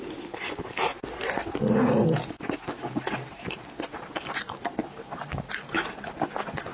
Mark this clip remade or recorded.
recorded